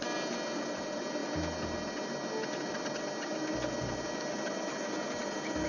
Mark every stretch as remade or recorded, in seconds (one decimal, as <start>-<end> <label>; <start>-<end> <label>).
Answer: 0.0-5.7 recorded